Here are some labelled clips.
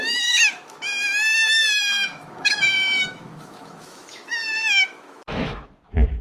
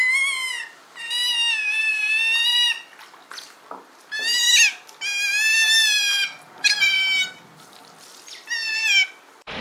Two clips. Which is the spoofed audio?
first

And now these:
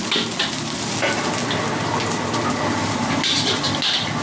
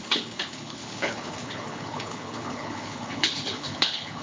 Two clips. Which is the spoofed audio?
second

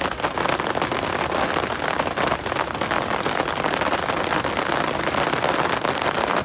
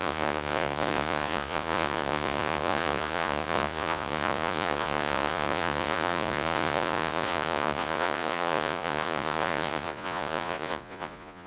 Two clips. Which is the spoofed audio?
second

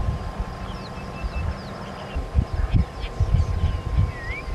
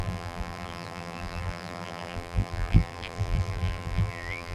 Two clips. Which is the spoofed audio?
second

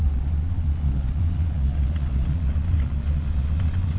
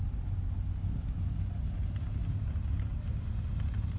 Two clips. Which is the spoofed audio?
first